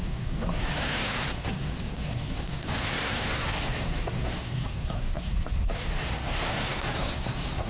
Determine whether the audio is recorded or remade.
remade